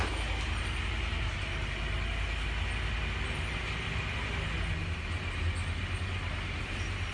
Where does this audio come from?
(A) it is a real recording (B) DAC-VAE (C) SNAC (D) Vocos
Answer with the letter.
A